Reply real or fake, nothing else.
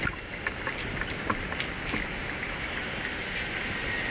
real